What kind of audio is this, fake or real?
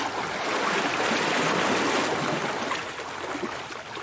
real